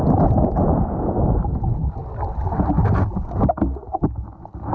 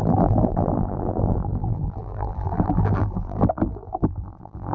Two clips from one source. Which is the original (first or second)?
first